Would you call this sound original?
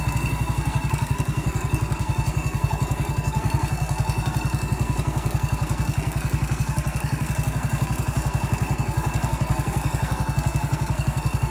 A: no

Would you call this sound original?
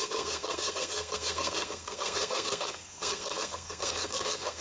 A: no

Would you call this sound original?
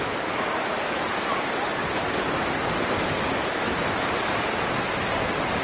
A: yes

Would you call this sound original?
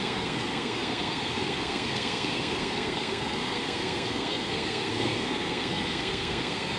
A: no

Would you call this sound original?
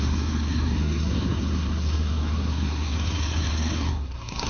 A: no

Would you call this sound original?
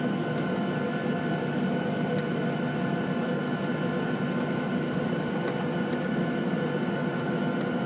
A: yes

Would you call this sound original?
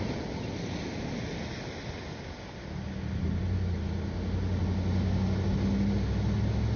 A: yes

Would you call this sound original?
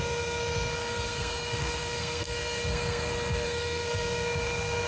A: no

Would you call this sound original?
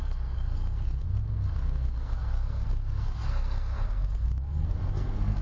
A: no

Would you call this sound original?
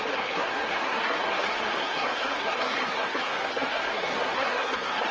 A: no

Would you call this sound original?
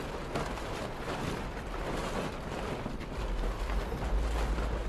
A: yes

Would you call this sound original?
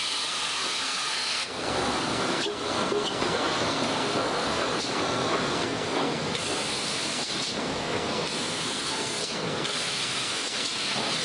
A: no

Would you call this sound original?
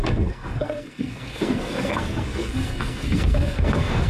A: no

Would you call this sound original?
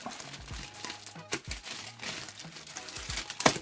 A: yes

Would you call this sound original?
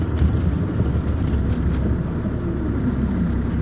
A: yes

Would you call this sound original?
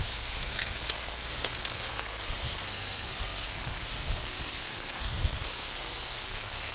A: no